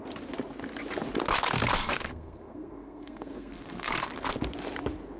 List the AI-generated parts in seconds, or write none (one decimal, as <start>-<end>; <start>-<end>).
1.8-4.1